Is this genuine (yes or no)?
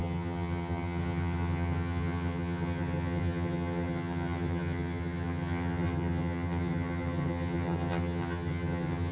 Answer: no